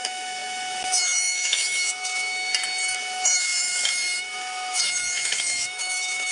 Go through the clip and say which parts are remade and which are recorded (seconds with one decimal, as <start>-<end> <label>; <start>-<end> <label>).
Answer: 0.0-2.5 remade; 2.5-3.0 recorded; 3.0-6.3 remade